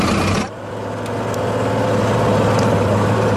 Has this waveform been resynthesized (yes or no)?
no